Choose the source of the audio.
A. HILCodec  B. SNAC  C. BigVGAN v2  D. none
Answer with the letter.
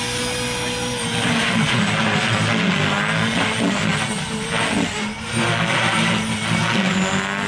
D